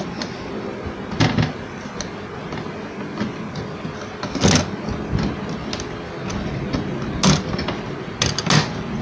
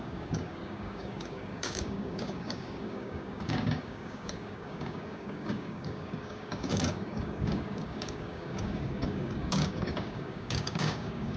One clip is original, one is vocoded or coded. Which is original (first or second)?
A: first